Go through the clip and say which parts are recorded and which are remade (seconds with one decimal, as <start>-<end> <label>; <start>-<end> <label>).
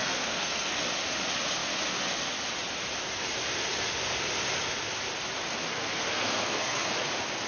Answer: 0.0-0.8 remade; 0.8-5.7 recorded; 5.7-6.9 remade; 6.9-7.5 recorded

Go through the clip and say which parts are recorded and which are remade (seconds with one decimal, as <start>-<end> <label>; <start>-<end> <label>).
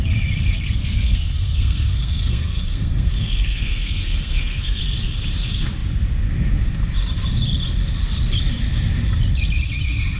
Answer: 0.0-0.8 recorded; 0.8-4.8 remade; 4.8-10.2 recorded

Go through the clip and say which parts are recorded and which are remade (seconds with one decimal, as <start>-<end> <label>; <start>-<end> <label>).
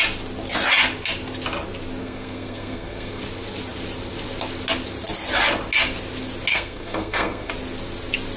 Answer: 0.0-2.0 recorded; 2.0-3.2 remade; 3.2-6.5 recorded; 6.5-7.5 remade; 7.5-8.4 recorded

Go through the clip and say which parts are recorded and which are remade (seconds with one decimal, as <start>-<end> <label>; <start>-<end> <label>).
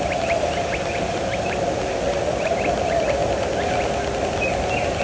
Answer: 0.0-5.0 recorded